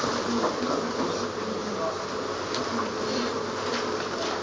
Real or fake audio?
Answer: real